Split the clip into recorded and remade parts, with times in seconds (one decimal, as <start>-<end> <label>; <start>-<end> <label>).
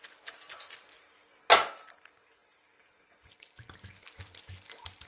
0.0-5.1 recorded